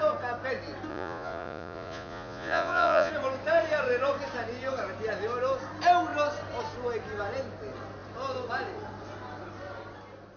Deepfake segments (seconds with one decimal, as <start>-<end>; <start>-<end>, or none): 0.9-3.1